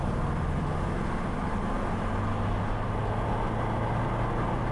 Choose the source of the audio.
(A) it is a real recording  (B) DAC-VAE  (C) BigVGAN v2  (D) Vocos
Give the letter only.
A